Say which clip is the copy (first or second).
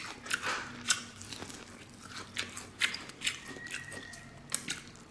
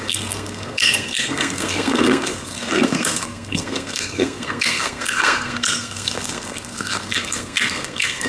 second